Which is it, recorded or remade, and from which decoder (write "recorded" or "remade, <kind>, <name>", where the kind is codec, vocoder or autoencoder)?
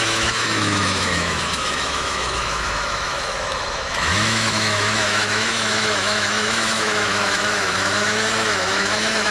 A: remade, autoencoder, DAC-VAE